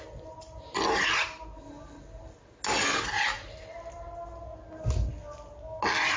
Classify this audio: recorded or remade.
recorded